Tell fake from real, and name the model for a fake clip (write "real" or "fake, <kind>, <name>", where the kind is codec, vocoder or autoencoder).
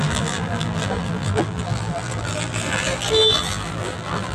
fake, vocoder, BigVGAN v2